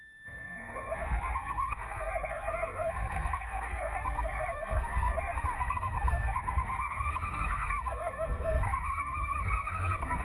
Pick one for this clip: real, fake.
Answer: fake